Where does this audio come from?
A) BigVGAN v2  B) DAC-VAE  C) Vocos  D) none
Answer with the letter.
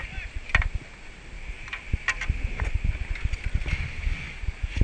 D